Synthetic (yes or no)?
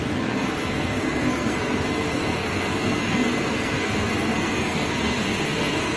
yes